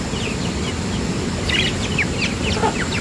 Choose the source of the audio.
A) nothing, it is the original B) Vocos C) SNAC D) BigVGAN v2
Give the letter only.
A